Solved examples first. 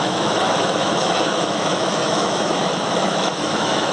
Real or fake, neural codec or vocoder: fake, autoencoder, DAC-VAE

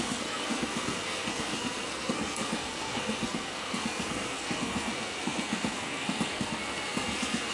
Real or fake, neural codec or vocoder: fake, codec, SNAC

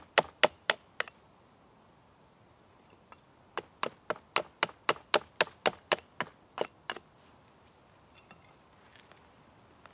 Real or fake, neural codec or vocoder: real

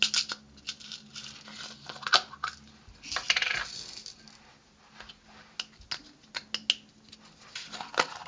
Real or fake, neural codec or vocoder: real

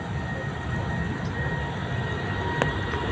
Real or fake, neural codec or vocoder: real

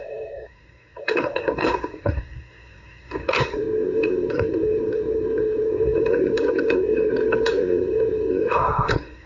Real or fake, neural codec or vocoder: fake, codec, SNAC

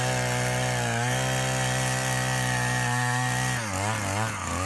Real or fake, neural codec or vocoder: real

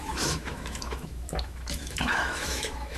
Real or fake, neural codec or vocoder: fake, autoencoder, DAC-VAE